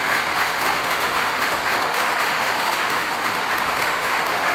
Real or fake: fake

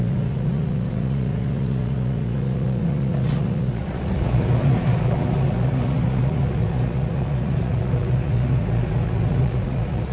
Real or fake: fake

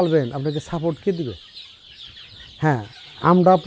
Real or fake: real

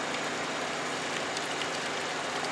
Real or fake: fake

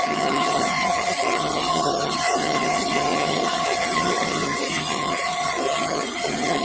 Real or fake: fake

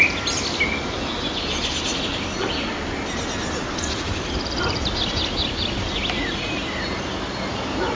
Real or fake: real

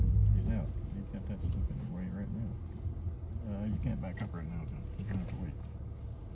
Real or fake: real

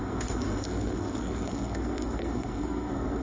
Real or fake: fake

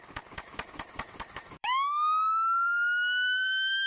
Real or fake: fake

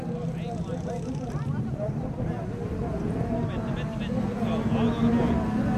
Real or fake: real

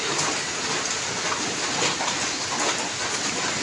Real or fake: real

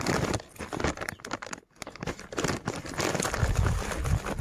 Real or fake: real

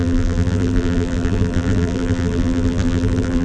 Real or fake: fake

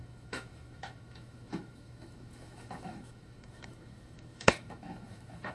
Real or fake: fake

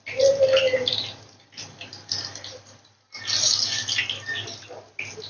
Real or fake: real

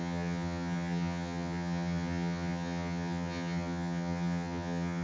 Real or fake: fake